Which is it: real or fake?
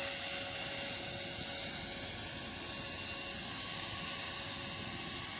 real